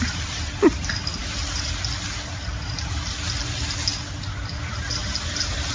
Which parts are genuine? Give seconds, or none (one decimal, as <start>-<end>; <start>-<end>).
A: 0.0-5.7